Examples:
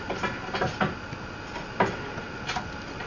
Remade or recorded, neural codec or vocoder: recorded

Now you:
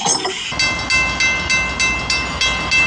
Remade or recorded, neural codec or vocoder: recorded